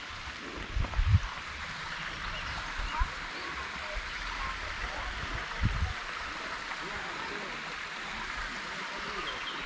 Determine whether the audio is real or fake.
real